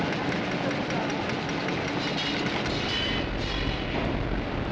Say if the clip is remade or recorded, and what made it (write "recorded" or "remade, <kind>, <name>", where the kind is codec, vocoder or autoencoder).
recorded